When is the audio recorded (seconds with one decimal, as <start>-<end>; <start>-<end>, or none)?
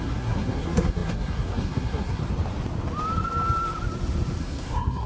2.2-4.4